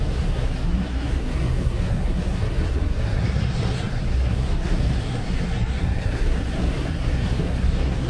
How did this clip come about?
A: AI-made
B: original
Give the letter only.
A